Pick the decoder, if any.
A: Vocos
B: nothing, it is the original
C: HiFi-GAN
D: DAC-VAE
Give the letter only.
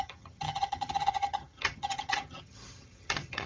C